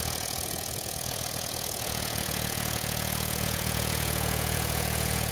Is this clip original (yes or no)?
no